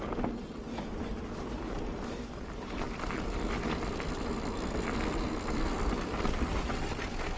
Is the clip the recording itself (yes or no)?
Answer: yes